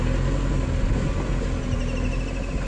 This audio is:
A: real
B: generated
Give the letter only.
A